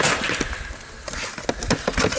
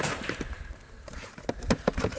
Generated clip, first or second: second